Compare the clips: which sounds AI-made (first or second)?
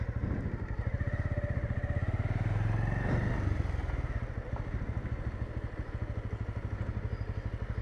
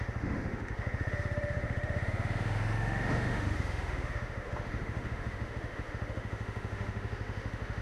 second